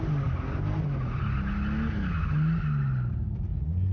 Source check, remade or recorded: recorded